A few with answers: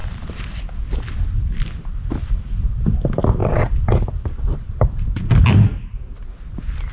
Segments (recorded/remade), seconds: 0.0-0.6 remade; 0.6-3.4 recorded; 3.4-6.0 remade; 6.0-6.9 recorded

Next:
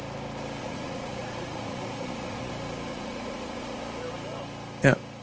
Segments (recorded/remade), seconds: 0.0-0.6 recorded; 0.6-2.5 remade; 2.5-2.9 recorded; 2.9-3.8 remade; 3.8-5.2 recorded

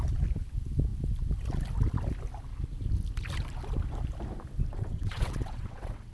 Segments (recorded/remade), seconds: 0.0-4.7 recorded; 4.7-6.1 remade